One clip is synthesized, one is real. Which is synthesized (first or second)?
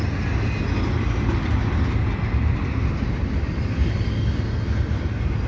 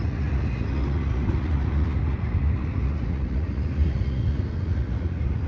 second